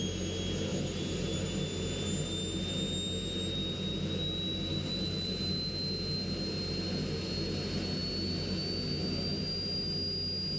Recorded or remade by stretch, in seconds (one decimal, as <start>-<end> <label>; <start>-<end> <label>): 0.0-0.7 recorded; 0.7-1.4 remade; 1.4-4.7 recorded; 4.7-5.5 remade; 5.5-10.6 recorded